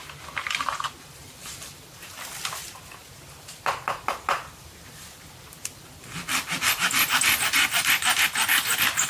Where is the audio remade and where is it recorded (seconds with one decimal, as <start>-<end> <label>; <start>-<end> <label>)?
0.0-1.2 recorded; 1.2-2.6 remade; 2.6-3.0 recorded; 3.0-7.9 remade; 7.9-9.1 recorded